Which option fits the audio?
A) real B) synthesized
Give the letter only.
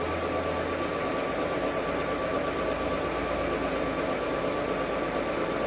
A